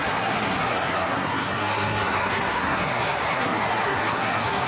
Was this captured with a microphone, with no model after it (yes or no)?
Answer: no